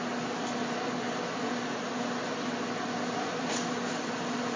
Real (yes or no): yes